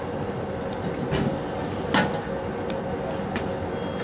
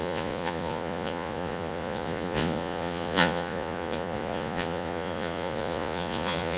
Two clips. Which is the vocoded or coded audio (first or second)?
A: second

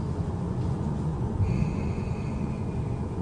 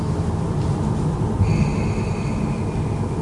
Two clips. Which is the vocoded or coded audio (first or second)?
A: first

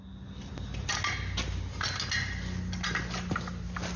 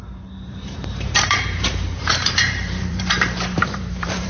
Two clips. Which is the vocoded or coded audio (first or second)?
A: second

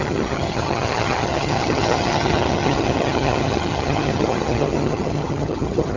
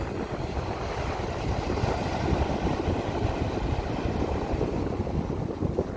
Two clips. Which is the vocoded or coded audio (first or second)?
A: first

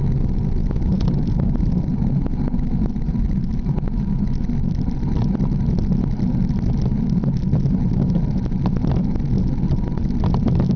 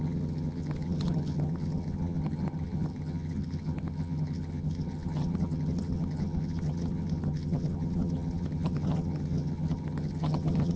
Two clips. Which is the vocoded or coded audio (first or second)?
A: second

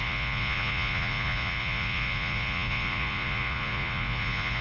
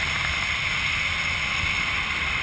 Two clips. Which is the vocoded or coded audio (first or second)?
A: first